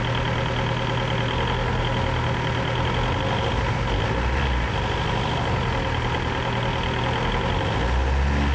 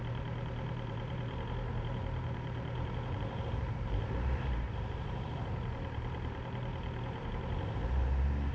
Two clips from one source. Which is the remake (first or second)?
second